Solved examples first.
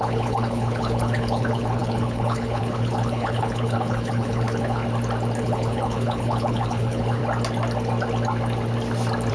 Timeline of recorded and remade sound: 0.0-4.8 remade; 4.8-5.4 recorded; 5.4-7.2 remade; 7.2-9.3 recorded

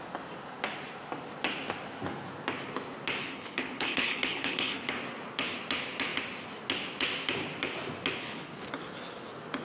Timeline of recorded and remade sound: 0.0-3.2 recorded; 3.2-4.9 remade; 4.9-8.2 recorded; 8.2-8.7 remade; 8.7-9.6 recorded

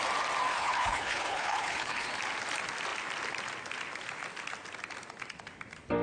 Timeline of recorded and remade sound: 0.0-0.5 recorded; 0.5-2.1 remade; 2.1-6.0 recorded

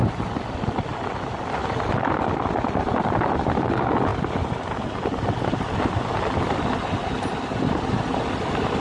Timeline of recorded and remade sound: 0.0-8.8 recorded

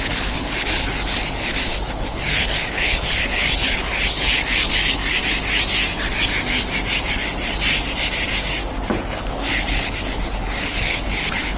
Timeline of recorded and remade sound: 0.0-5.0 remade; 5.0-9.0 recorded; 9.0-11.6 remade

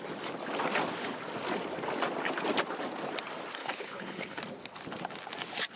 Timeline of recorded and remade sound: 0.0-3.6 recorded; 3.6-4.4 remade; 4.4-5.8 recorded

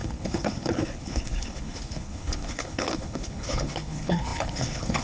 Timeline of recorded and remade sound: 0.0-5.0 remade